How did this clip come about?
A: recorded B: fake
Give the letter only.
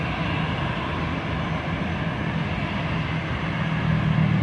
A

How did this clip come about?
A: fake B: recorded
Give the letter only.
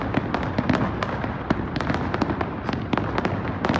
B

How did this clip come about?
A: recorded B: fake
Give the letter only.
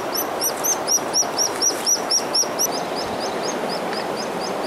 A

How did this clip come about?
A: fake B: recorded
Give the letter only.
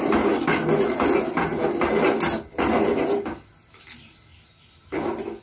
B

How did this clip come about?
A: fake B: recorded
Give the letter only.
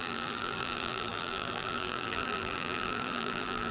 A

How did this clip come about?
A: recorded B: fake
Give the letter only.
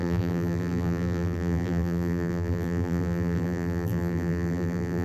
B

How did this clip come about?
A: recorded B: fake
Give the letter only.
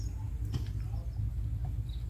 A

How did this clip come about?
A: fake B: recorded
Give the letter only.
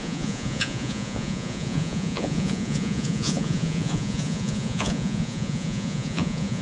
A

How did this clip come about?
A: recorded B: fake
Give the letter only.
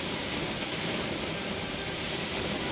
B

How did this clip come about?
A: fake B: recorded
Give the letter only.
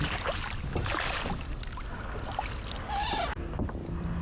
B